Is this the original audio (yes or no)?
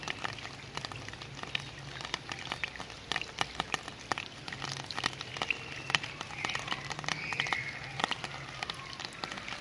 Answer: yes